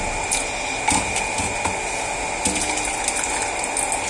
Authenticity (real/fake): real